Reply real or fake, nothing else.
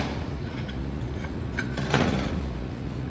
fake